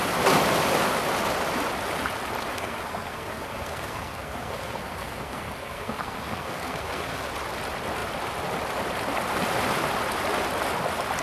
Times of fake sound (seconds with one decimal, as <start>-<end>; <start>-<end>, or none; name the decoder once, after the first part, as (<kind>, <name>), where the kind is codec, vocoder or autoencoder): 2.5-7.3 (codec, SNAC)